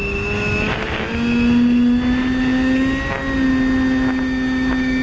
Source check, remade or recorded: recorded